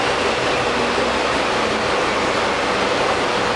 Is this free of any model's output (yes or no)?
yes